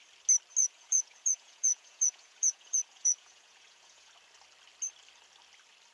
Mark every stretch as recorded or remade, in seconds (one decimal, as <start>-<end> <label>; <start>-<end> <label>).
0.0-0.6 recorded; 0.6-4.1 remade; 4.1-5.9 recorded